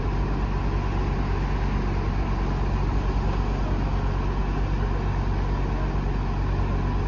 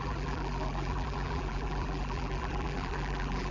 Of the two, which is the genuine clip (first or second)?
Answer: first